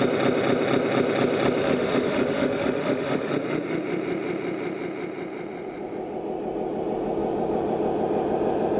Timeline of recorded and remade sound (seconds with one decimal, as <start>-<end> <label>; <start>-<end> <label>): 0.0-1.6 recorded; 1.6-3.3 remade; 3.3-8.8 recorded